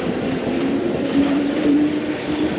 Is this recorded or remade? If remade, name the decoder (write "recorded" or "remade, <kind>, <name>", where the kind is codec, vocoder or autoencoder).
remade, vocoder, BigVGAN v2